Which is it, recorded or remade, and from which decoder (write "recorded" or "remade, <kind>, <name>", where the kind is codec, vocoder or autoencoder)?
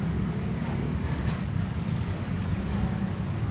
remade, codec, DAC